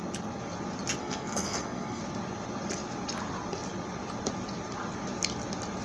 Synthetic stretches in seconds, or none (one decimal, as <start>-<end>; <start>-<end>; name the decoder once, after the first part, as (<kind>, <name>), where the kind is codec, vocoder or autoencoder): 1.0-2.0 (codec, SNAC)